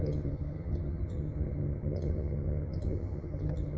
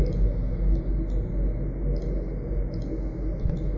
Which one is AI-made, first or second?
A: first